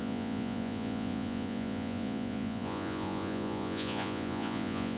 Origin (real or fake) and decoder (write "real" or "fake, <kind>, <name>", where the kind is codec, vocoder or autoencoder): fake, vocoder, Vocos